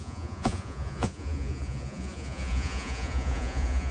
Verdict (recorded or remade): remade